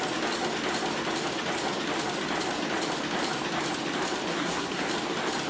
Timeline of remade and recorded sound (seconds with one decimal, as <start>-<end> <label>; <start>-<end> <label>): 0.0-4.3 recorded; 4.3-4.9 remade; 4.9-5.5 recorded